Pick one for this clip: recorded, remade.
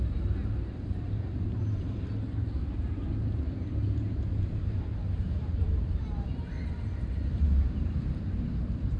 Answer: remade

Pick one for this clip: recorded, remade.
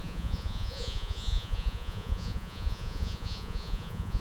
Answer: remade